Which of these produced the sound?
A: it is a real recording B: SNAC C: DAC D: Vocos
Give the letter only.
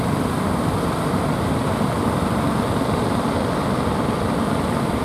A